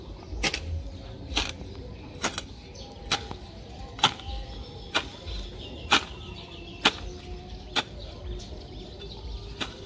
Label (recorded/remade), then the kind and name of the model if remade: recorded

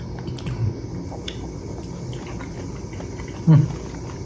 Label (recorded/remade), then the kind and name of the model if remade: recorded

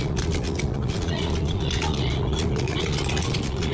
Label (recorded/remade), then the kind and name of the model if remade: remade, vocoder, Vocos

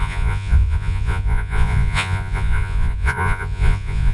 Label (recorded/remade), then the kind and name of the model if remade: remade, vocoder, Vocos